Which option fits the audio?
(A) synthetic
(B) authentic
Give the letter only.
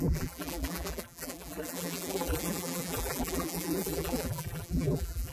A